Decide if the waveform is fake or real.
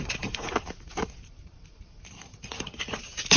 fake